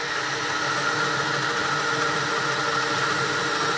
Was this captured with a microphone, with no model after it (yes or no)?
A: yes